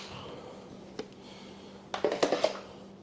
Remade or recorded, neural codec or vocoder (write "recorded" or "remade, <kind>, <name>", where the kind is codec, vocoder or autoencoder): recorded